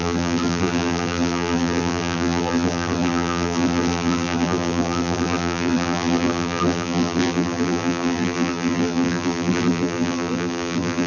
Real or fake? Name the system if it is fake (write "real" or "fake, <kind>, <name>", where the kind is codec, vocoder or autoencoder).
fake, vocoder, BigVGAN v2